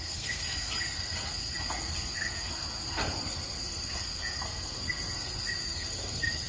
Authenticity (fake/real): fake